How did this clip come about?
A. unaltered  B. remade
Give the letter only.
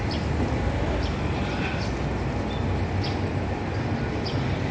A